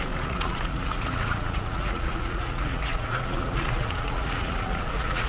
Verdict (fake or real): fake